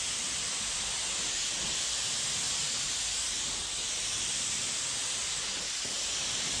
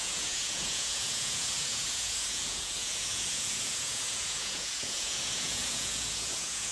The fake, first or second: second